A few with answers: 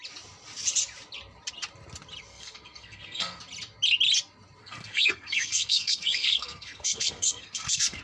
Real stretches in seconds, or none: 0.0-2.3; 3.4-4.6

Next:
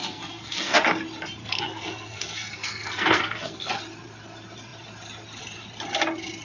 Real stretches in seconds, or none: 0.8-1.4; 3.8-6.4

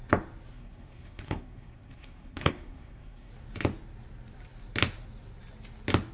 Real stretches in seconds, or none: 0.0-0.5; 3.3-6.1